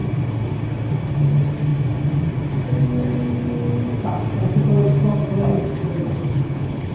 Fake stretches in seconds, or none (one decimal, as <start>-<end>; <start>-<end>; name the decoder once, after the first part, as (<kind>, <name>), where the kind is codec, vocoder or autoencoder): 5.5-6.9 (codec, HILCodec)